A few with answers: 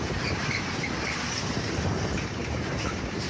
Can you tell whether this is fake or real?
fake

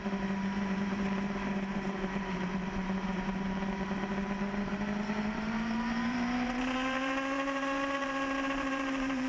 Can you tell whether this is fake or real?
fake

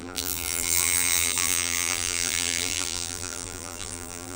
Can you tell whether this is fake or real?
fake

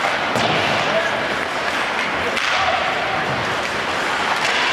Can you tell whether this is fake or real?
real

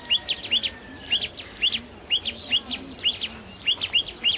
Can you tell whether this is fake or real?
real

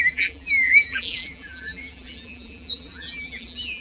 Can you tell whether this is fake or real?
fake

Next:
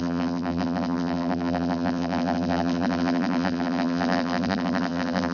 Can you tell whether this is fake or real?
fake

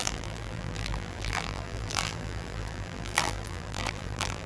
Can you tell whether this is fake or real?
fake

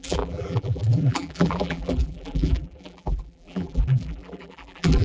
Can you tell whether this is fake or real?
fake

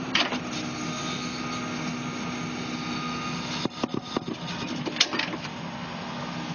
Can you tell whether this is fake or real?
real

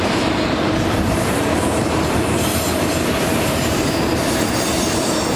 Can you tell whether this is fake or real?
fake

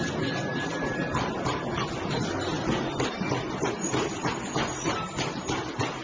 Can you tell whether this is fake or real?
real